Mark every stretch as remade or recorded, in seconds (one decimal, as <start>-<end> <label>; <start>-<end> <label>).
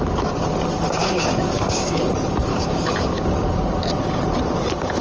0.0-1.0 recorded; 1.0-2.0 remade; 2.0-2.5 recorded; 2.5-3.2 remade; 3.2-5.0 recorded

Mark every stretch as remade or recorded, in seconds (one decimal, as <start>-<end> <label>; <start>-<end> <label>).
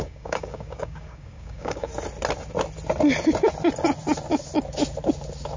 0.0-1.9 remade; 1.9-5.6 recorded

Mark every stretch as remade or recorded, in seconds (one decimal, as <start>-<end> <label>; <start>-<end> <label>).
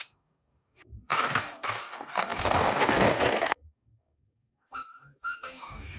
0.0-6.0 remade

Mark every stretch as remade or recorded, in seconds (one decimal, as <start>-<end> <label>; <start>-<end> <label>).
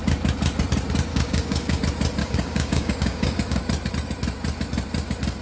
0.0-1.1 recorded; 1.1-1.8 remade; 1.8-2.2 recorded; 2.2-3.6 remade; 3.6-5.4 recorded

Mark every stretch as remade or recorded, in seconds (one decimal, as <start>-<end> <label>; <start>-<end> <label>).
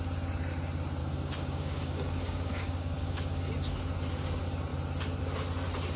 0.0-1.0 recorded; 1.0-3.5 remade; 3.5-6.0 recorded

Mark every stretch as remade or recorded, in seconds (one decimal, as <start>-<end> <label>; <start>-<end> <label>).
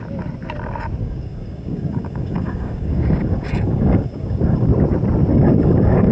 0.0-1.0 recorded; 1.0-4.7 remade; 4.7-5.3 recorded; 5.3-6.1 remade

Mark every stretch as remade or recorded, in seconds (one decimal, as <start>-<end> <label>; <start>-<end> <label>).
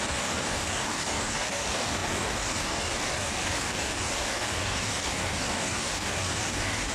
0.0-6.9 remade